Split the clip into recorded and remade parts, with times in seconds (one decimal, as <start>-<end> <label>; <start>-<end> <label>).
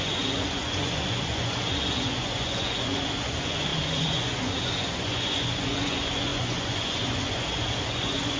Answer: 0.0-8.4 remade